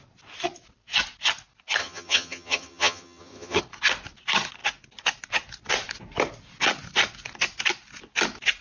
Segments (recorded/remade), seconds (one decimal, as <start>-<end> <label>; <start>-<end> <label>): 0.0-1.8 recorded; 1.8-3.6 remade; 3.6-8.6 recorded